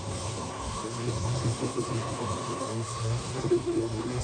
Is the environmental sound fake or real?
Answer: fake